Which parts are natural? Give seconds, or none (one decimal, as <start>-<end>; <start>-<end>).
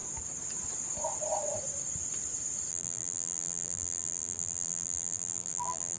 0.0-2.7